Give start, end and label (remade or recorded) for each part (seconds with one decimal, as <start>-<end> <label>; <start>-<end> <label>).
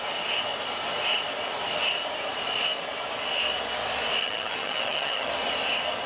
0.0-4.2 recorded; 4.2-5.3 remade; 5.3-6.1 recorded